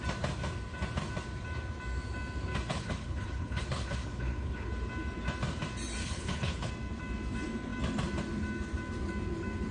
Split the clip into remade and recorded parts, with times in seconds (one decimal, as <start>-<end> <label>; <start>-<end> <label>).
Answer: 0.0-2.7 recorded; 2.7-4.7 remade; 4.7-6.0 recorded; 6.0-6.7 remade; 6.7-9.7 recorded

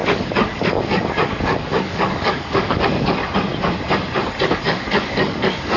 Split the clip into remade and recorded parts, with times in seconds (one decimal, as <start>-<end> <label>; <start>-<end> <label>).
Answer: 0.0-3.2 remade; 3.2-4.5 recorded; 4.5-5.8 remade

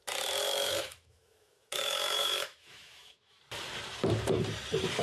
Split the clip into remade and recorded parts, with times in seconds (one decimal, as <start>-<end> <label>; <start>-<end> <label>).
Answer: 0.0-0.4 recorded; 0.4-3.4 remade; 3.4-5.0 recorded

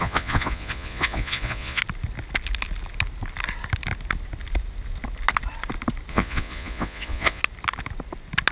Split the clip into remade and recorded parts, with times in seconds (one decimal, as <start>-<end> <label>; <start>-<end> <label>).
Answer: 0.0-1.8 remade; 1.8-6.1 recorded; 6.1-7.4 remade; 7.4-8.5 recorded

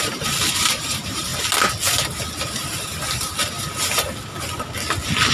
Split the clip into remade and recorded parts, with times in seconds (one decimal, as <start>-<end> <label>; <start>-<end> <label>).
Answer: 0.0-1.3 remade; 1.3-2.4 recorded; 2.4-2.9 remade; 2.9-5.3 recorded

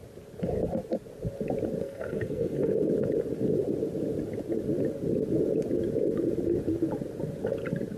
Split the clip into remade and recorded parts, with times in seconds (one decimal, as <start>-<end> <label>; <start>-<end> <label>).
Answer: 0.0-1.8 recorded; 1.8-2.9 remade; 2.9-8.0 recorded

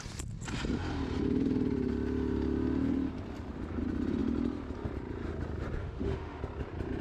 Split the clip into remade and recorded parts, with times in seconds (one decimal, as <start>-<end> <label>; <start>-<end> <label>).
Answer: 0.0-5.8 recorded; 5.8-6.4 remade; 6.4-7.0 recorded